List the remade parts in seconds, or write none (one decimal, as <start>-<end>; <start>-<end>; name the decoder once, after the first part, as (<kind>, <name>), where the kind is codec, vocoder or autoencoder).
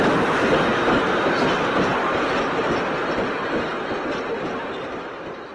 none